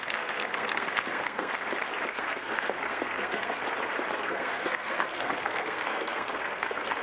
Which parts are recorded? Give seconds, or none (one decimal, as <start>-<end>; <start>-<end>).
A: 1.5-2.1; 3.6-4.2